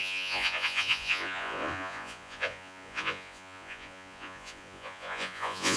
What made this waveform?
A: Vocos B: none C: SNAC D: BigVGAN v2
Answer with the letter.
A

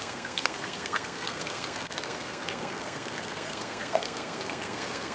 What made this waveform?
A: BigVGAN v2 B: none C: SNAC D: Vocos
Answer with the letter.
C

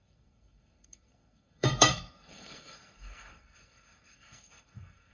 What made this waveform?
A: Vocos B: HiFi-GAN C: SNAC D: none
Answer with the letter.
C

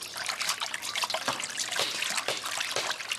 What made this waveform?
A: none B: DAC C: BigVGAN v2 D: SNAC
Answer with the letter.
A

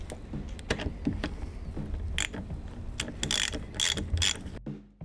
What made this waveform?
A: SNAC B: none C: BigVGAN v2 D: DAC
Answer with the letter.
B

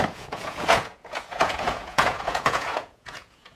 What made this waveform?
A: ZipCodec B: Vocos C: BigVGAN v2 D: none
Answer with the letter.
B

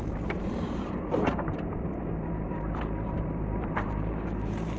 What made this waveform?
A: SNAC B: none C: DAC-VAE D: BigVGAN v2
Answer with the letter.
D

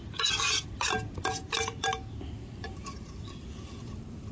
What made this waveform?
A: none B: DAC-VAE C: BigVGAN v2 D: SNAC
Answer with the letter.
C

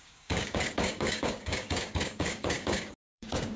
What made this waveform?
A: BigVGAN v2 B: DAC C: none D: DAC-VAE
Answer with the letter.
B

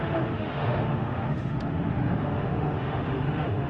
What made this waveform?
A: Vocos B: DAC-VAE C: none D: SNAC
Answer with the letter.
B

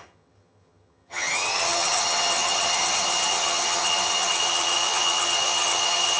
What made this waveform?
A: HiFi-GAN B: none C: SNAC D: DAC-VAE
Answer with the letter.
A